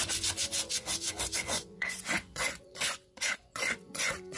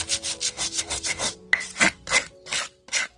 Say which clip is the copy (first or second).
first